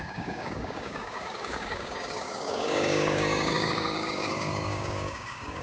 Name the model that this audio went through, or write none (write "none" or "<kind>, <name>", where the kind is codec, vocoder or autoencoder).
codec, DAC